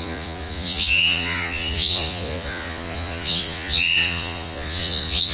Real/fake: fake